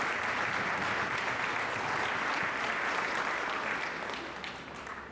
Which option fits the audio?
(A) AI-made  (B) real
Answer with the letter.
B